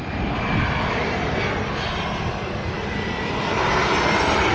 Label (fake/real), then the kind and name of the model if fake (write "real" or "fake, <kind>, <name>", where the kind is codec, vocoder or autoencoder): real